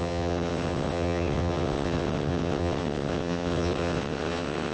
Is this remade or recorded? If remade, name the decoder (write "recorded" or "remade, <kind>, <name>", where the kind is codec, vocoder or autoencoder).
remade, vocoder, WaveNeXt